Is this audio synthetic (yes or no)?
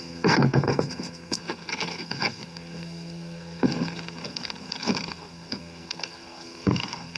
yes